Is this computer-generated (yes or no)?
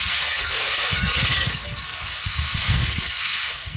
yes